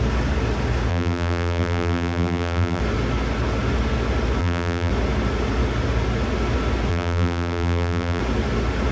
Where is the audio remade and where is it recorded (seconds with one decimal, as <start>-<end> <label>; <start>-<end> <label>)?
0.0-0.9 recorded; 0.9-2.8 remade; 2.8-4.4 recorded; 4.4-4.9 remade; 4.9-6.9 recorded; 6.9-8.2 remade; 8.2-8.9 recorded